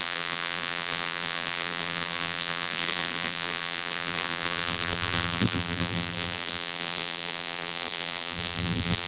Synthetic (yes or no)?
yes